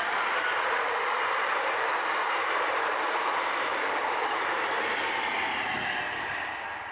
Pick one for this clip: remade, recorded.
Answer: remade